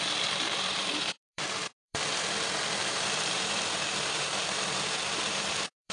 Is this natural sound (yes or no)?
no